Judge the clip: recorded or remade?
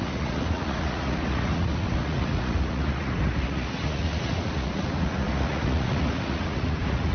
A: remade